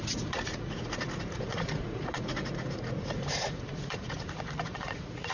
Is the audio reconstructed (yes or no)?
yes